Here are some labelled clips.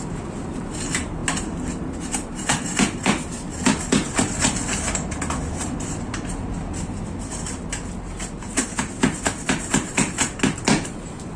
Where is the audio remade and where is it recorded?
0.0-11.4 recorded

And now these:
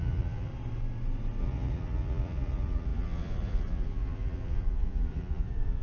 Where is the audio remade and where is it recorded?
0.0-0.5 remade; 0.5-1.4 recorded; 1.4-5.8 remade

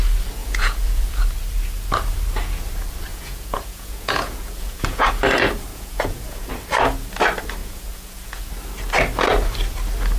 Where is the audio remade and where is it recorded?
0.0-0.4 recorded; 0.4-1.2 remade; 1.2-3.1 recorded; 3.1-5.1 remade; 5.1-5.7 recorded; 5.7-6.5 remade; 6.5-7.6 recorded; 7.6-8.5 remade; 8.5-10.2 recorded

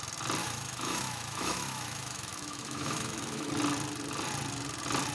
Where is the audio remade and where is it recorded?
0.0-0.4 recorded; 0.4-3.5 remade; 3.5-5.1 recorded

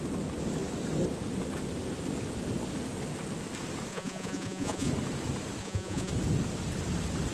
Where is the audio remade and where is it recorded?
0.0-3.9 recorded; 3.9-4.9 remade; 4.9-5.6 recorded; 5.6-6.1 remade; 6.1-7.3 recorded

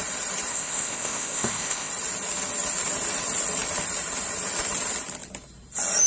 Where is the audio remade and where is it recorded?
0.0-0.5 recorded; 0.5-1.9 remade; 1.9-6.1 recorded

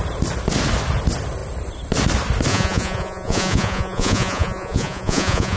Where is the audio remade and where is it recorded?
0.0-2.5 recorded; 2.5-5.6 remade